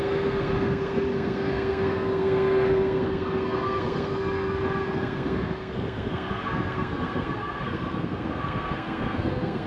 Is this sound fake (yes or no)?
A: yes